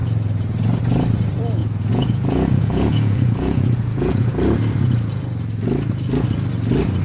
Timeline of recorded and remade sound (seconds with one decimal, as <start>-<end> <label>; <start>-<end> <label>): 0.0-1.6 recorded; 1.6-4.3 remade; 4.3-7.0 recorded